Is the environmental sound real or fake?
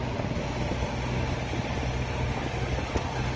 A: real